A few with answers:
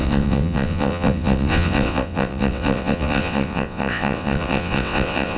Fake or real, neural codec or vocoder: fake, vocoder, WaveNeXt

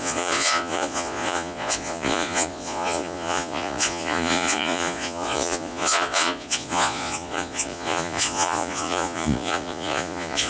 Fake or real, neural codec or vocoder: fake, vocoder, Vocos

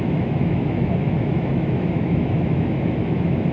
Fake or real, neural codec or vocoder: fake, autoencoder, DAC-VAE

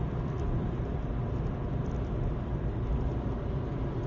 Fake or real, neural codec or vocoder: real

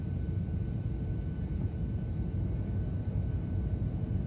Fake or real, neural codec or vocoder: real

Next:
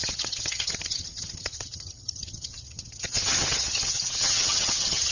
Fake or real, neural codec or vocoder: fake, vocoder, HiFi-GAN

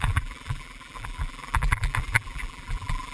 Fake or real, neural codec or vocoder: fake, vocoder, BigVGAN v2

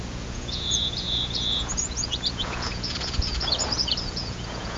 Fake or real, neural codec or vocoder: fake, vocoder, Vocos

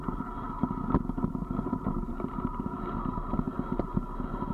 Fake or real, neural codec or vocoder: real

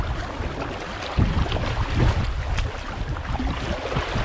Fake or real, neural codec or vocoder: real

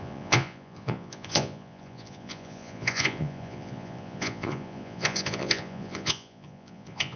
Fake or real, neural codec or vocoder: fake, vocoder, Vocos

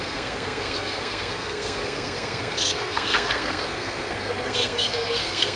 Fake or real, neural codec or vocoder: fake, codec, SNAC